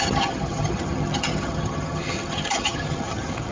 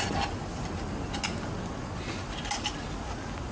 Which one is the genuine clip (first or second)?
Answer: second